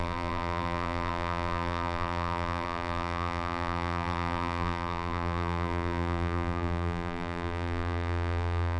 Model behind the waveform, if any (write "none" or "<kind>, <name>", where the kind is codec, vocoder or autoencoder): vocoder, BigVGAN v2